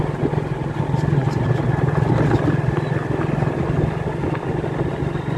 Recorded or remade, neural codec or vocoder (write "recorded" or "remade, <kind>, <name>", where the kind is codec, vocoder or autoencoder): recorded